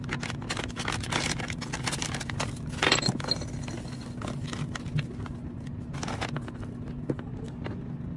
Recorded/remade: recorded